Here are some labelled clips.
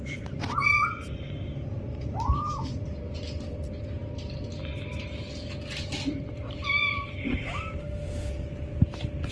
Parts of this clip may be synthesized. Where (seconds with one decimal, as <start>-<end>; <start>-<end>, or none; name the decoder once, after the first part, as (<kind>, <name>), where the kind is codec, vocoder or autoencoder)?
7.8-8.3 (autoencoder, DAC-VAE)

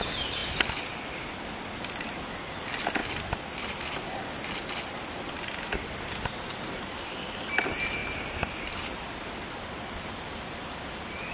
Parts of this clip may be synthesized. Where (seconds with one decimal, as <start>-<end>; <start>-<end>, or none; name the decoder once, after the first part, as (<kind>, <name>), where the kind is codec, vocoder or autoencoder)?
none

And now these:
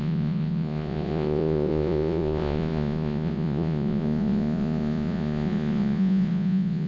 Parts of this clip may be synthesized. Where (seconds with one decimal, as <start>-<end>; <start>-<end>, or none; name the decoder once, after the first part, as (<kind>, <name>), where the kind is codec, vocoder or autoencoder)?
0.0-6.9 (vocoder, Vocos)

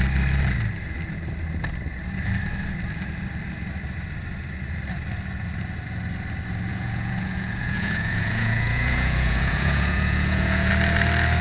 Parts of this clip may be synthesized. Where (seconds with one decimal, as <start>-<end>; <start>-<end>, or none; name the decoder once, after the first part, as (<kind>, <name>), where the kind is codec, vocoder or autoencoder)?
6.7-10.7 (vocoder, Vocos)